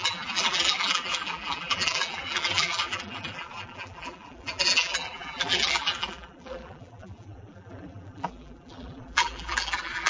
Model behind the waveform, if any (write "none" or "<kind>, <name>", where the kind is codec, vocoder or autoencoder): vocoder, BigVGAN v2